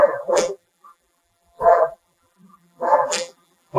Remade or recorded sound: remade